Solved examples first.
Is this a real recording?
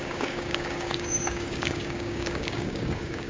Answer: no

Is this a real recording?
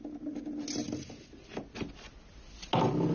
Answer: yes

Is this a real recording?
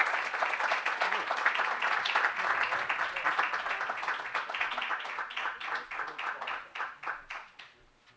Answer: yes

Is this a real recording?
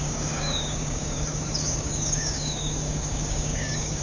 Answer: no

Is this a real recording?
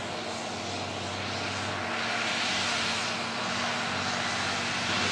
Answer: yes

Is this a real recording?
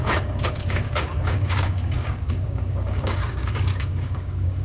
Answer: no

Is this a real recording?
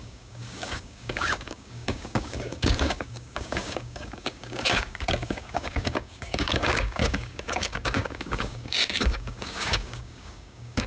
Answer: no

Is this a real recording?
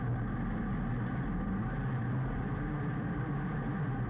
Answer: yes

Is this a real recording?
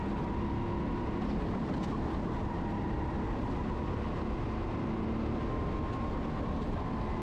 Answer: yes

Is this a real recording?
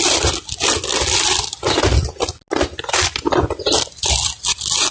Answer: yes